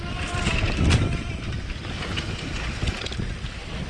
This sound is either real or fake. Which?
real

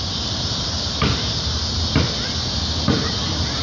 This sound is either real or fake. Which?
real